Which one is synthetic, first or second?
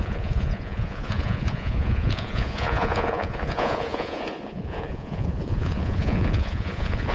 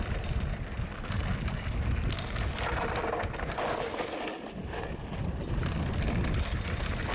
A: first